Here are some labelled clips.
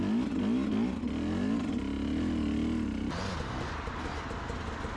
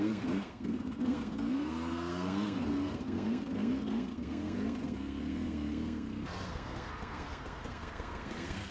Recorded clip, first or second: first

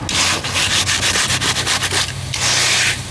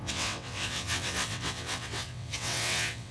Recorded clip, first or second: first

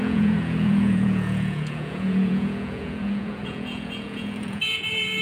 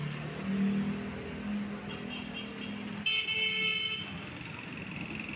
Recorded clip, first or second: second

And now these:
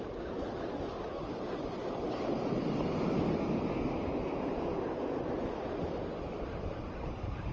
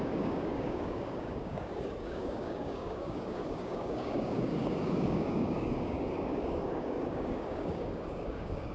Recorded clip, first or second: first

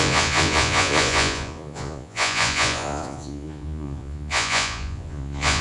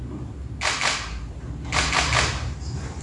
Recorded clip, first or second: second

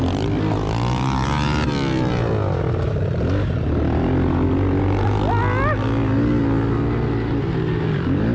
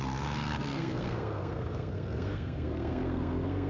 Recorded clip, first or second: first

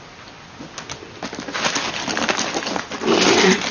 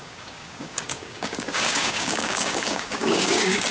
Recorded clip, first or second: first